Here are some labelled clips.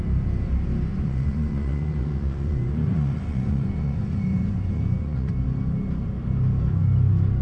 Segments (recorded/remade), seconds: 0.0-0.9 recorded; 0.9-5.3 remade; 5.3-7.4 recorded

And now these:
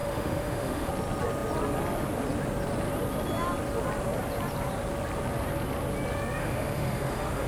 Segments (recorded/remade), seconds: 0.0-0.9 remade; 0.9-6.4 recorded; 6.4-7.5 remade

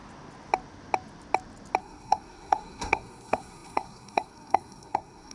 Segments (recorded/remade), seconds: 0.0-1.8 recorded; 1.8-5.3 remade

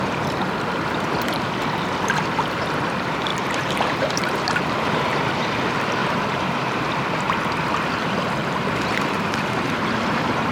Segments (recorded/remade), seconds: 0.0-3.3 recorded; 3.3-5.2 remade; 5.2-6.0 recorded; 6.0-6.9 remade; 6.9-8.4 recorded; 8.4-10.5 remade

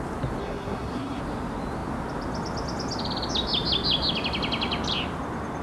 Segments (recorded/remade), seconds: 0.0-0.4 recorded; 0.4-1.2 remade; 1.2-5.6 recorded

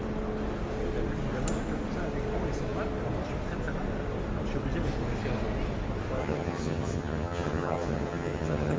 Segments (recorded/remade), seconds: 0.0-6.2 recorded; 6.2-8.8 remade

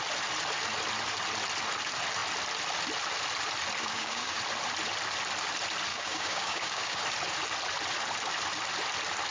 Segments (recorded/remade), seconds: 0.0-3.8 recorded; 3.8-4.4 remade; 4.4-5.9 recorded; 5.9-7.0 remade; 7.0-9.3 recorded

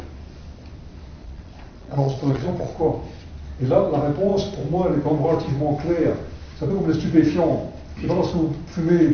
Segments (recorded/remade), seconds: 0.0-1.2 recorded; 1.2-2.7 remade; 2.7-9.1 recorded